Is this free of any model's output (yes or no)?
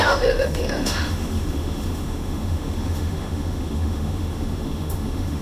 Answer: no